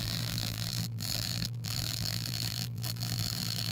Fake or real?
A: fake